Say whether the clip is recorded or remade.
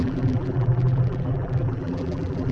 remade